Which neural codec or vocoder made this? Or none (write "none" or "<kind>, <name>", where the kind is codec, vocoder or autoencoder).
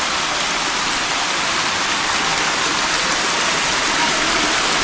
none